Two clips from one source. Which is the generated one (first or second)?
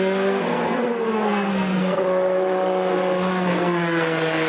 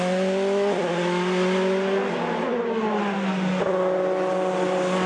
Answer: first